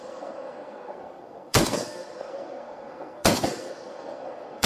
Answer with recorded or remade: remade